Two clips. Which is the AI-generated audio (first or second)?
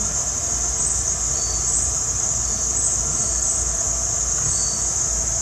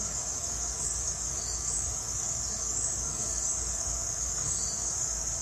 second